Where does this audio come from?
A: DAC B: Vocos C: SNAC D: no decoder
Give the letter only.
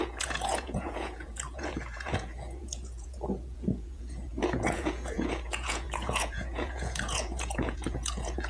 B